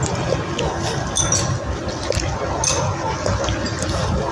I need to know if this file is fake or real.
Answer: real